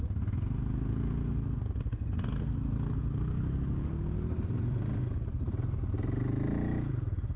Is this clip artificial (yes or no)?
no